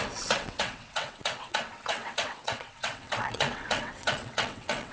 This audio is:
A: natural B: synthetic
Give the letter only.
B